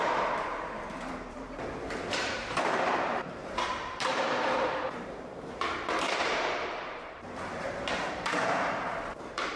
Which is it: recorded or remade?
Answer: remade